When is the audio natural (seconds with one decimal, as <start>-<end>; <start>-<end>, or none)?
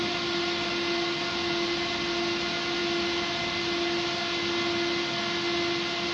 0.0-6.1